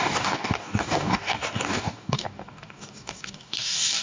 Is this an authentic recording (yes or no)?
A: no